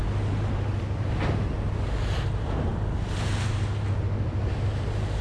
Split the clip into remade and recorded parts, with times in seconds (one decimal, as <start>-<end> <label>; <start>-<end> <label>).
0.0-5.2 recorded